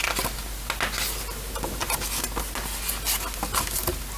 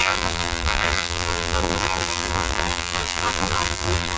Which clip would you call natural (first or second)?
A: first